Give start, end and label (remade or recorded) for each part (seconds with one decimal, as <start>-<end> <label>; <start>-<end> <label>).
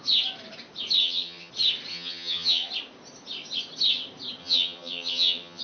0.0-1.0 recorded; 1.0-1.5 remade; 1.5-1.9 recorded; 1.9-2.7 remade; 2.7-4.4 recorded; 4.4-5.6 remade